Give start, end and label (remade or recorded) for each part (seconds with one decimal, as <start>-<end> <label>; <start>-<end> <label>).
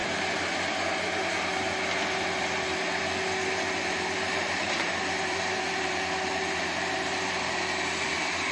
0.0-3.9 recorded; 3.9-8.5 remade